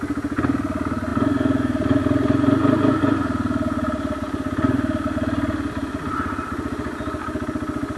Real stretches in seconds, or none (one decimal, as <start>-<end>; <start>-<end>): 0.0-8.0